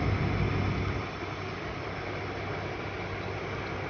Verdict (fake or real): real